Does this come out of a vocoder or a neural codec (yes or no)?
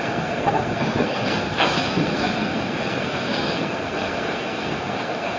yes